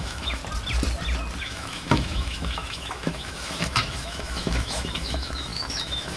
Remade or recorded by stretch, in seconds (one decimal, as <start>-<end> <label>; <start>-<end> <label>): 0.0-0.4 remade; 0.4-1.4 recorded; 1.4-6.2 remade